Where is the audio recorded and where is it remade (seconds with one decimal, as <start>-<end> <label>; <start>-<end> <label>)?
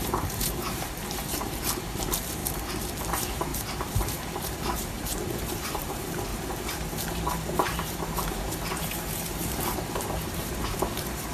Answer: 0.0-6.3 remade; 6.3-7.3 recorded; 7.3-11.3 remade